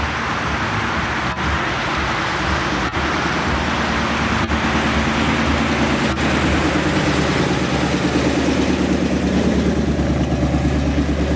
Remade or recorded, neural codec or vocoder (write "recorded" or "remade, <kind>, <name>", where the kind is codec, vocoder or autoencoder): recorded